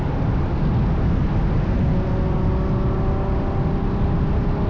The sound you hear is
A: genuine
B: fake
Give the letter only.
A